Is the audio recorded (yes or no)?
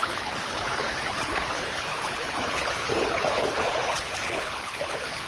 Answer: no